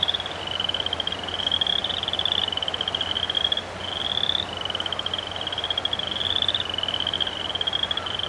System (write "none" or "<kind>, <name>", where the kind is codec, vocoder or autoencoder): none